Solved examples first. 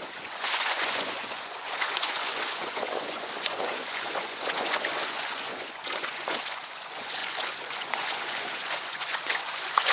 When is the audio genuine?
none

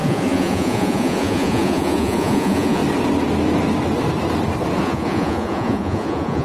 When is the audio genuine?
2.8-4.8

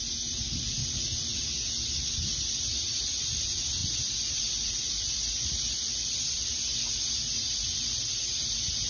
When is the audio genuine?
0.0-8.9

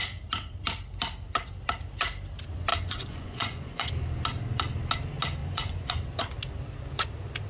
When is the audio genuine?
0.0-2.7; 3.9-5.4; 5.9-7.5